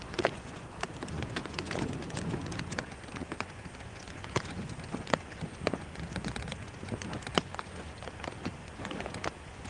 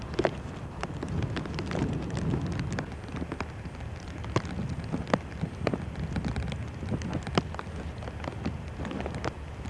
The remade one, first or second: first